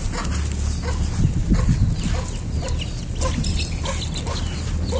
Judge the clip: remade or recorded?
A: recorded